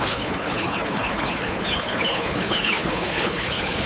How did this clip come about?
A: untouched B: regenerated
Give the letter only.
B